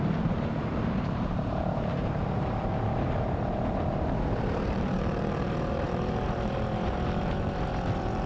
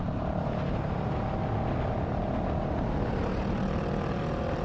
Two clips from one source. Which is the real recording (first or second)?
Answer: second